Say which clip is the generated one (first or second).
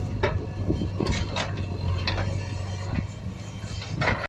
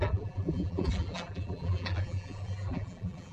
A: second